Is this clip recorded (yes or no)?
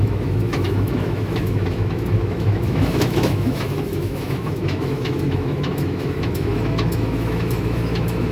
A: no